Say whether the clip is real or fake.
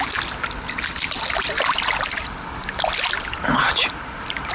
real